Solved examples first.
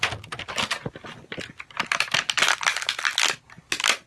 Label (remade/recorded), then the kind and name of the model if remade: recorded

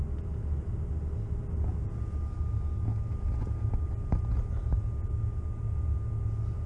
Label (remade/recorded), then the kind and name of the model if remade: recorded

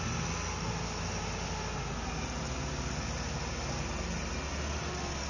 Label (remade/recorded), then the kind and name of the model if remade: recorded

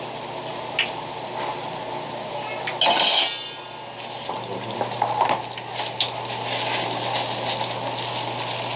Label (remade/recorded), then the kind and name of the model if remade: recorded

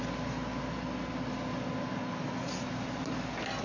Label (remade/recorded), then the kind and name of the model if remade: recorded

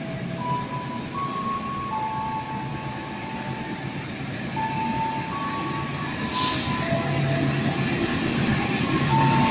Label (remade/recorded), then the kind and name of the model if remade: recorded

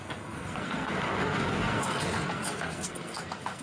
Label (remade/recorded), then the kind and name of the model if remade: remade, codec, SNAC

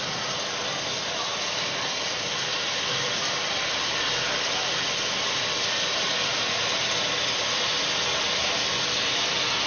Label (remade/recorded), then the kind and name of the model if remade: recorded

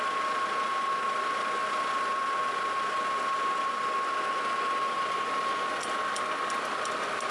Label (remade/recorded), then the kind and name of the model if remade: recorded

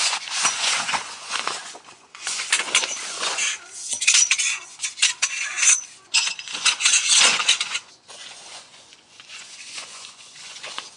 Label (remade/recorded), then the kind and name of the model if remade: remade, vocoder, Vocos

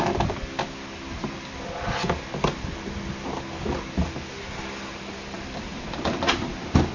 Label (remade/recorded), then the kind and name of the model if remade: recorded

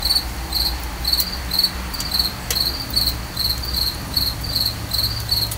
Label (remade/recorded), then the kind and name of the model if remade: recorded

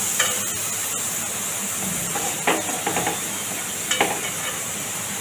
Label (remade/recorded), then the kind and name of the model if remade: recorded